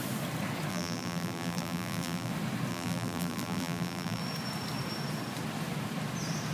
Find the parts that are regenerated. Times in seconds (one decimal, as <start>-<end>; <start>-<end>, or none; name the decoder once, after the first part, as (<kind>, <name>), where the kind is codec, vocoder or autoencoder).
0.7-2.3 (vocoder, BigVGAN v2); 2.7-4.2